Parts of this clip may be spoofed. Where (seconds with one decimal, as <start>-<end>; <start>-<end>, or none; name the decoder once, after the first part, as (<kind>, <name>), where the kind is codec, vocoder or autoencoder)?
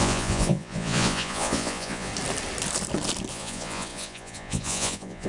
0.0-2.1 (vocoder, Vocos); 3.3-5.3